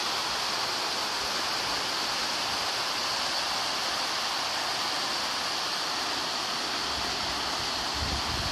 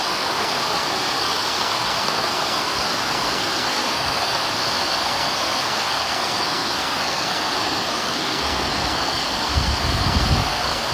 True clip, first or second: first